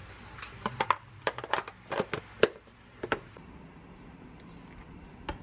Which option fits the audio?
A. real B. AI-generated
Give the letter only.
A